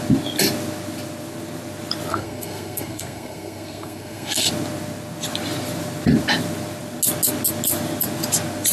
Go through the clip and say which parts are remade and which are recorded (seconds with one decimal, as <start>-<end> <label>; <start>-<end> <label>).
0.0-2.1 recorded; 2.1-4.5 remade; 4.5-8.7 recorded